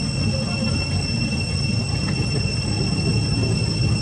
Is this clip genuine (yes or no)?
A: yes